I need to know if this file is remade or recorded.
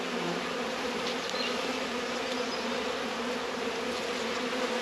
recorded